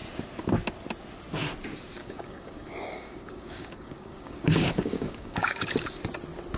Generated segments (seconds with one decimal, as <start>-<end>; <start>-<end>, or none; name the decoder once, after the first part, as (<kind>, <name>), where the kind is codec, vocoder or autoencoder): 2.0-6.0 (codec, DAC)